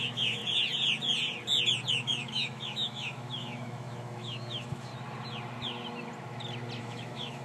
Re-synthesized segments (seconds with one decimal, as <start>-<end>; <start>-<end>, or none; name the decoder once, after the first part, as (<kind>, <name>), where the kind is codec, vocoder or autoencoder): 0.0-0.4 (autoencoder, DAC-VAE); 1.9-4.9; 6.8-7.4